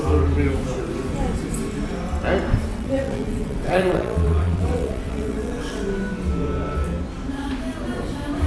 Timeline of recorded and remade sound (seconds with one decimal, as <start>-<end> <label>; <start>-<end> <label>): 0.0-2.7 recorded; 2.7-5.8 remade; 5.8-8.5 recorded